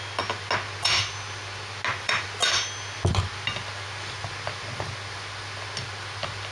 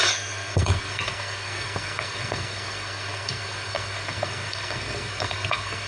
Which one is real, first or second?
first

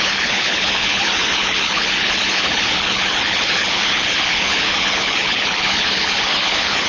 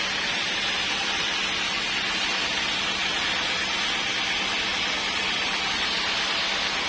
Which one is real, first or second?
second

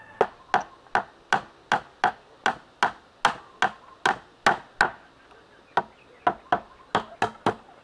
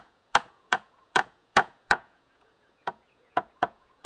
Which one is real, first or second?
first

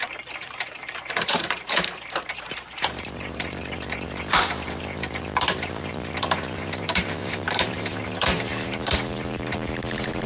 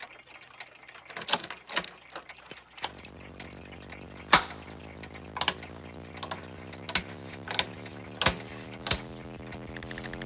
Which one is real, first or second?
second